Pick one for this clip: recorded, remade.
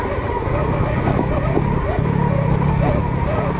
recorded